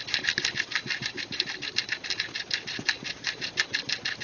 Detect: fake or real real